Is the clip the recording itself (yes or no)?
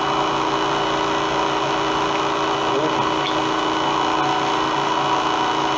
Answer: yes